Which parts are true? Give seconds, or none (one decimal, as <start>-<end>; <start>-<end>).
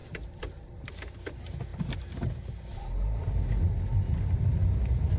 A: 0.9-1.7; 3.3-4.6